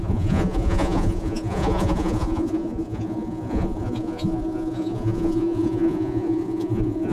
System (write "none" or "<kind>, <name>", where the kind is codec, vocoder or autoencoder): vocoder, Vocos